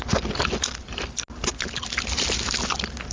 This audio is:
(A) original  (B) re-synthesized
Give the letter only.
A